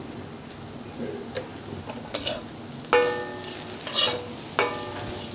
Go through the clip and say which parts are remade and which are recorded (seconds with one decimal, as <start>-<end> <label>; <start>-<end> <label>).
0.0-5.3 recorded